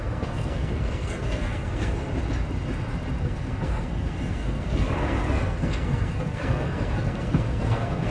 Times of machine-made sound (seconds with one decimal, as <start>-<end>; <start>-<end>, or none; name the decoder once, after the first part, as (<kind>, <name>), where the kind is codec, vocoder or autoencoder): 0.0-2.1 (codec, SNAC); 3.2-8.1